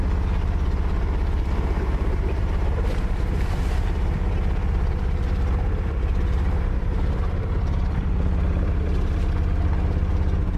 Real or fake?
fake